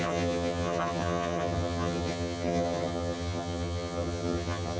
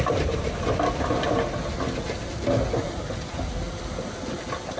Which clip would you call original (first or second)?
second